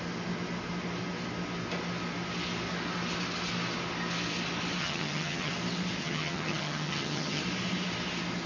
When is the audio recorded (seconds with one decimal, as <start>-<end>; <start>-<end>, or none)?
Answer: 0.0-4.8; 5.5-6.0; 7.4-8.5